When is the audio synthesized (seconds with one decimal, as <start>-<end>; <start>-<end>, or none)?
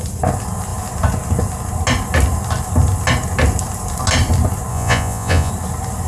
4.7-5.5